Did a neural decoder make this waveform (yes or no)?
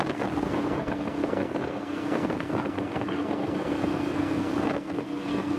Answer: yes